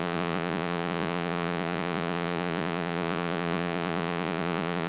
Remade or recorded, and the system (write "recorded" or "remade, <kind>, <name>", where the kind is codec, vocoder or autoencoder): remade, vocoder, Vocos